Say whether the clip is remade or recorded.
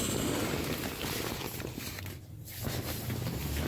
recorded